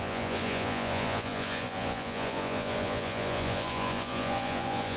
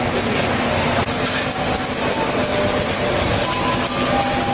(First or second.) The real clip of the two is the second